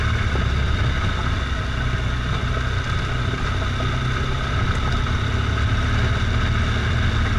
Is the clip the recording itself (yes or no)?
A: yes